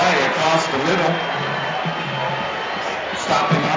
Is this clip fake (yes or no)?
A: no